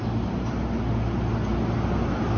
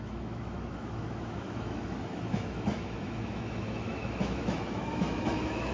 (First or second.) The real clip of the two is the first